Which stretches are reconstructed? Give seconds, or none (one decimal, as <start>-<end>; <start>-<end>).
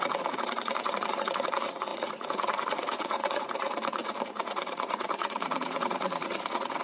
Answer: 0.0-6.8